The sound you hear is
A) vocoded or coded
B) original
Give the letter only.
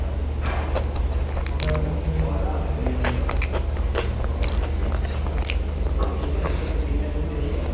B